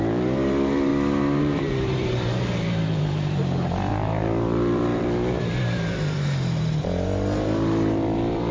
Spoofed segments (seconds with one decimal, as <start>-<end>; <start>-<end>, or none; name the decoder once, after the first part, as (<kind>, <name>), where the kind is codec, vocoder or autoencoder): 0.0-0.9 (vocoder, BigVGAN v2); 1.4-3.4; 3.9-8.5

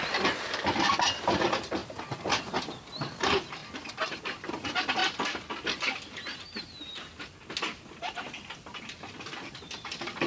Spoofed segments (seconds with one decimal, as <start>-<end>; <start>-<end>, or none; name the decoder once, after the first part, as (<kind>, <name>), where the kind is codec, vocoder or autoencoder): 0.0-1.8 (vocoder, BigVGAN v2); 2.6-5.0; 7.9-10.3

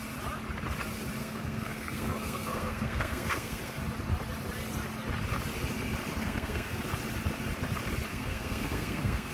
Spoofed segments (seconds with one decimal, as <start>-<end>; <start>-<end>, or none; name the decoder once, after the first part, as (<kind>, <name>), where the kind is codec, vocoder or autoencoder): 1.2-3.8 (codec, SNAC); 6.2-6.8; 8.1-9.3

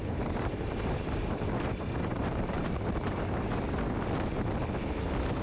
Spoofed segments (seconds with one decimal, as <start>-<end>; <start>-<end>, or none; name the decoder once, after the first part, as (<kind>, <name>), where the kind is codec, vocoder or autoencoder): 0.0-3.2 (vocoder, BigVGAN v2)

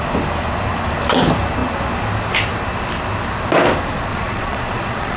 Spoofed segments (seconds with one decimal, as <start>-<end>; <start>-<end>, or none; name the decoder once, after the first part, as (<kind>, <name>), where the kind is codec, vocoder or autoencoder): 4.1-5.2 (vocoder, Vocos)

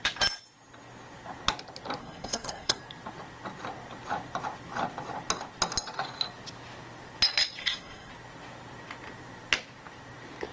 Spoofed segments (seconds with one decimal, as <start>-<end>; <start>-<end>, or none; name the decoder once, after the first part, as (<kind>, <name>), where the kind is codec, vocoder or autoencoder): 2.0-2.8 (codec, SNAC); 7.6-8.1

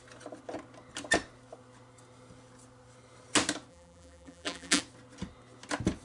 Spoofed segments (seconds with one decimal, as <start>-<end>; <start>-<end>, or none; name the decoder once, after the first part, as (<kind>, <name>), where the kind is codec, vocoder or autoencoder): 3.7-4.8 (vocoder, BigVGAN v2)

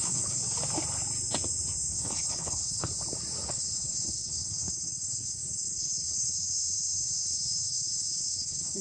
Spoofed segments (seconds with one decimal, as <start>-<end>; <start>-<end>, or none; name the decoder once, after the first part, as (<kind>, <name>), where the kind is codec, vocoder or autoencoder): 0.0-0.4 (codec, HILCodec); 1.9-2.9; 3.5-8.8